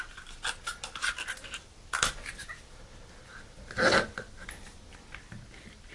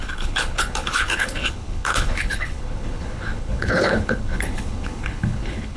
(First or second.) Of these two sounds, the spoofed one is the second